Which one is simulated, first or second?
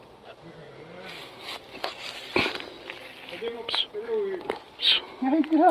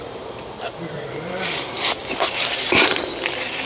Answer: second